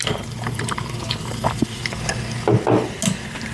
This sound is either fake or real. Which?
real